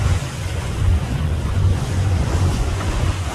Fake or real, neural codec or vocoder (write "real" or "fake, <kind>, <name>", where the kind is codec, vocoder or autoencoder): fake, vocoder, Vocos